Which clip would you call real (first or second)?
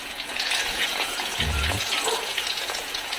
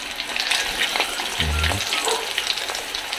second